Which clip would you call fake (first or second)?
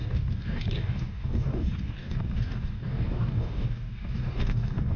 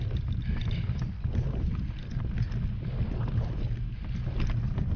first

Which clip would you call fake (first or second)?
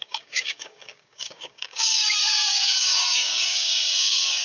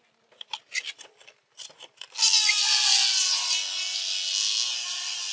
first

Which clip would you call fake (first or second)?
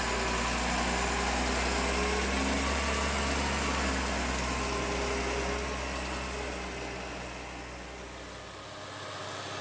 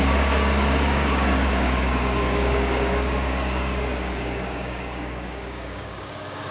second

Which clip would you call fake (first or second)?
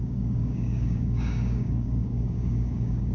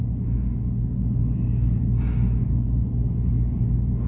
first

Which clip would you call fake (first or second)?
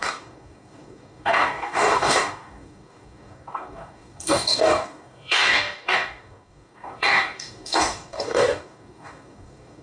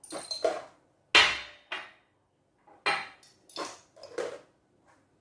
first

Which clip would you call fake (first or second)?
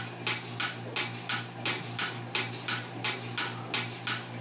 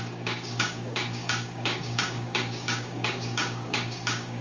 second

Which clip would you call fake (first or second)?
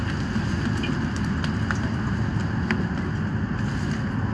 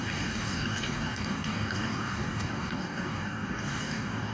second